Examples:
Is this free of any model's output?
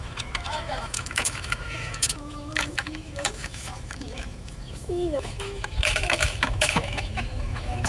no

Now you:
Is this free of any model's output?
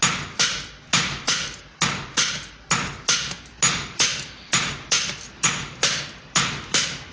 yes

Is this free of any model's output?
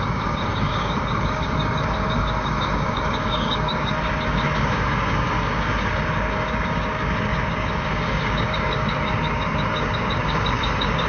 no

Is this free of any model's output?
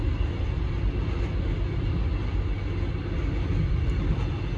yes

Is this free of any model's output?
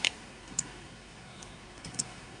no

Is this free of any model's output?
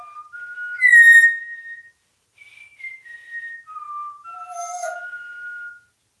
yes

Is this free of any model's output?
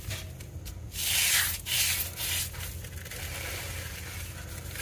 yes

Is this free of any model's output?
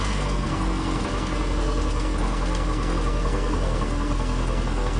no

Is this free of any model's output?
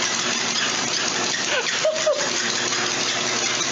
yes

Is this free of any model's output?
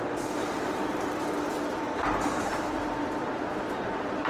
no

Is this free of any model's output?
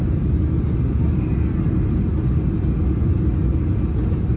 yes